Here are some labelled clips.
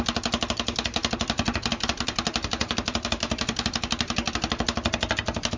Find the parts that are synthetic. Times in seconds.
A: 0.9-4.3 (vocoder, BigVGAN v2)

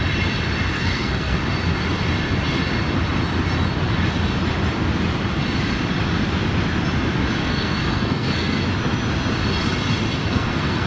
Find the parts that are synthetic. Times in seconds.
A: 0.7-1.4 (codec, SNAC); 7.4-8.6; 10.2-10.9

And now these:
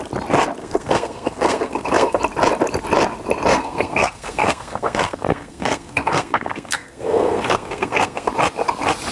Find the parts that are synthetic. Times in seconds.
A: 0.6-2.2 (codec, SNAC); 3.5-8.3

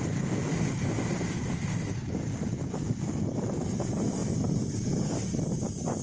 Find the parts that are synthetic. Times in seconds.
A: none

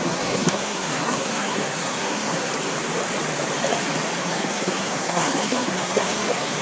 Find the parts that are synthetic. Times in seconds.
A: 0.0-2.5 (codec, SNAC); 4.2-6.6

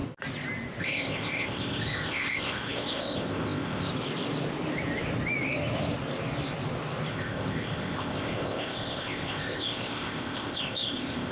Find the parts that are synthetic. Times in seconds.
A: 0.8-3.9 (codec, ZipCodec); 7.1-11.3